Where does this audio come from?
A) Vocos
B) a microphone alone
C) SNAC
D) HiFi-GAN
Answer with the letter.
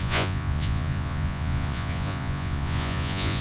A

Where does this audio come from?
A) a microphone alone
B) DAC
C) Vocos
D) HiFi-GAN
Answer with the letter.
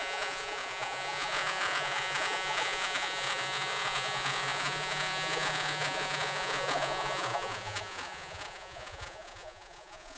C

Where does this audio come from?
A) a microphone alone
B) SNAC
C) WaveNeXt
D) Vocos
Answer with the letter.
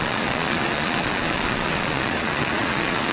D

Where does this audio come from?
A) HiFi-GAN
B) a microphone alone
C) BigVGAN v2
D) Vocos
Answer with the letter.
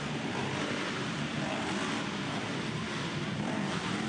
B